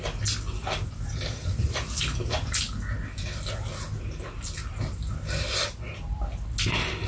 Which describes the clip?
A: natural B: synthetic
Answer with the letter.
A